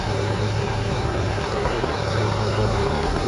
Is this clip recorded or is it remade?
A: remade